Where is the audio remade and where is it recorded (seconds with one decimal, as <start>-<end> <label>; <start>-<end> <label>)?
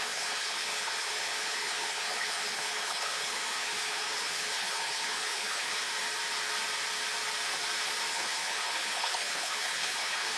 0.0-5.8 remade; 5.8-8.1 recorded; 8.1-10.4 remade